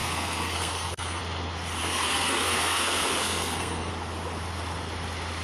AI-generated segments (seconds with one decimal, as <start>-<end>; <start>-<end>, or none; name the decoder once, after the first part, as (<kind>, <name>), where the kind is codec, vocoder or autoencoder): 0.0-1.2 (codec, SNAC); 1.8-3.9